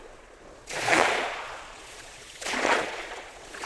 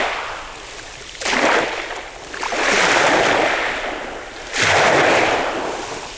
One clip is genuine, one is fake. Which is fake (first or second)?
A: first